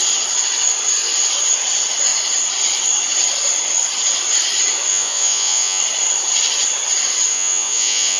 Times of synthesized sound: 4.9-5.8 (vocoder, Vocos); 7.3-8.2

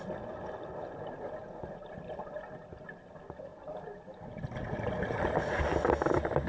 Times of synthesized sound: none

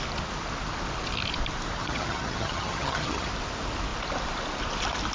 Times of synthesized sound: 1.8-3.3 (vocoder, HiFi-GAN)

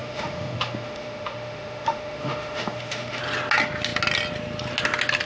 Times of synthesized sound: 0.0-3.2 (autoencoder, DAC-VAE)

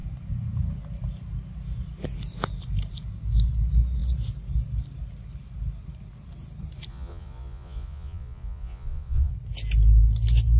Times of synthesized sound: 6.9-9.3 (vocoder, Vocos)

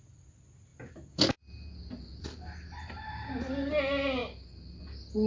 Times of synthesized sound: none